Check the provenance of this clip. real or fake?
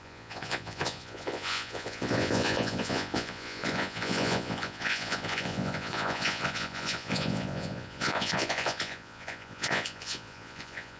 fake